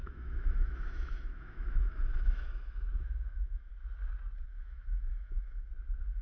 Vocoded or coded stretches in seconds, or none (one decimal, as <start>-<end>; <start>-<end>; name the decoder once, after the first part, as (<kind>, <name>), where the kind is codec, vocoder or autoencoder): 0.0-3.7 (autoencoder, DAC-VAE); 4.5-5.7